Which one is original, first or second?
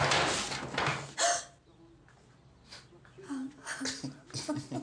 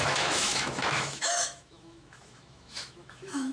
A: first